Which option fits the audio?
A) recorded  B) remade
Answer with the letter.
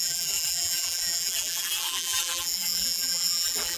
B